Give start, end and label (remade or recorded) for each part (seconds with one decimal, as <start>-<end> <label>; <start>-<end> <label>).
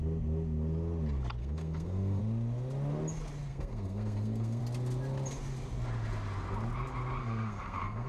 0.0-1.4 recorded; 1.4-2.2 remade; 2.2-3.5 recorded; 3.5-4.6 remade; 4.6-7.2 recorded; 7.2-8.1 remade